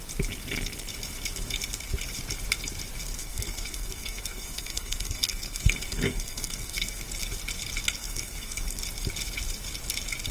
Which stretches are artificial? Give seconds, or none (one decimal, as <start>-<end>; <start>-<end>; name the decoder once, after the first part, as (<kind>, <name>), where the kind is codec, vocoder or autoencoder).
3.2-7.0 (codec, SNAC); 8.0-8.8